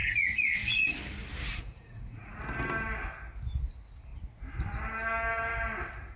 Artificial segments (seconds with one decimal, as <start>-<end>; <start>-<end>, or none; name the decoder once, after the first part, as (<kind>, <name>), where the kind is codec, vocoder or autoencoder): 0.0-0.9 (vocoder, Vocos); 1.5-2.4